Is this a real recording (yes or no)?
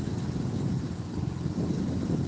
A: yes